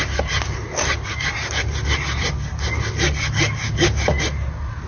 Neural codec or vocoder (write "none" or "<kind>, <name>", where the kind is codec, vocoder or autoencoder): none